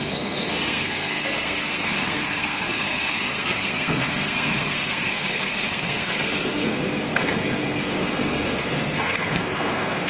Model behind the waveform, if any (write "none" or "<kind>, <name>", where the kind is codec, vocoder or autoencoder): codec, SNAC